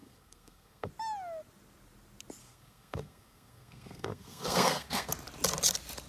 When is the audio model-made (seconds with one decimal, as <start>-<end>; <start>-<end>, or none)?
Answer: 0.0-0.9; 2.4-5.1